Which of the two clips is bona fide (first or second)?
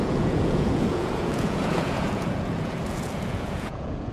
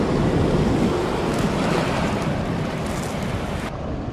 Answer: second